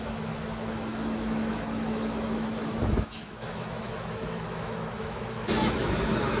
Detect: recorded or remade remade